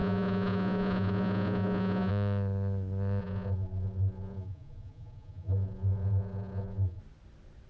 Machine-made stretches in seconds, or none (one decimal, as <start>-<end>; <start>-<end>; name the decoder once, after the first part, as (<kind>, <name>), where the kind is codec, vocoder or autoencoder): 0.0-2.1 (vocoder, Vocos); 3.2-7.0